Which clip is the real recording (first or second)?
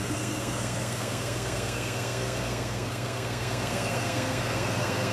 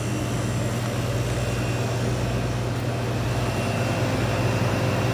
second